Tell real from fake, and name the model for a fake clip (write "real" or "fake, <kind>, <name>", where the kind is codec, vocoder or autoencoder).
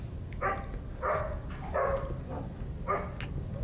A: real